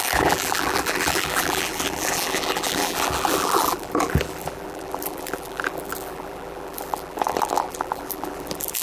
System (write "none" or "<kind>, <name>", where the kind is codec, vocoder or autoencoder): vocoder, BigVGAN v2